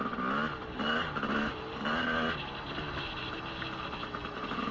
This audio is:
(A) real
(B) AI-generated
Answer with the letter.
A